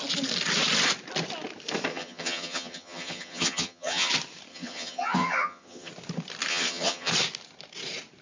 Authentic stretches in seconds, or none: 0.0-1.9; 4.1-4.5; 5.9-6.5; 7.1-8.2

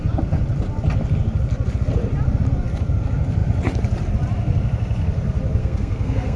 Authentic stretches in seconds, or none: 0.0-5.6